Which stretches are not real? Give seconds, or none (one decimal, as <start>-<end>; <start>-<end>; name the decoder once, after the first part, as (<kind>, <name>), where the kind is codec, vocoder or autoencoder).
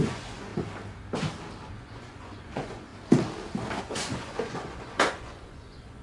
0.0-0.5 (vocoder, Vocos); 1.7-2.9; 3.8-6.0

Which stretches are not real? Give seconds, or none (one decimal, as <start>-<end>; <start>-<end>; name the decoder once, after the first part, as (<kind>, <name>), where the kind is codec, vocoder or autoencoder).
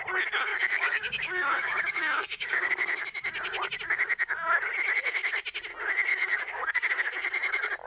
0.5-2.7 (codec, DAC); 6.1-6.9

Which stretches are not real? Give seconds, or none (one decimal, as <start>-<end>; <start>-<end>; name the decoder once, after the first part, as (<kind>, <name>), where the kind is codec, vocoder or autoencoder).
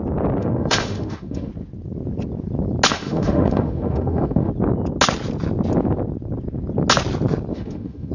0.4-1.5 (autoencoder, DAC-VAE); 2.9-4.5; 7.5-8.1